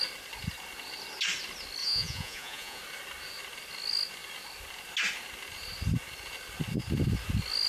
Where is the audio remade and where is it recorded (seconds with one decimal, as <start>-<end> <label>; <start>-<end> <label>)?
0.0-1.8 recorded; 1.8-2.8 remade; 2.8-7.7 recorded